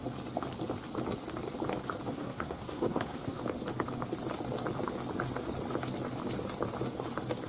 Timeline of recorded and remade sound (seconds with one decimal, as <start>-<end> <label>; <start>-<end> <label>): 0.0-2.1 recorded; 2.1-3.4 remade; 3.4-7.5 recorded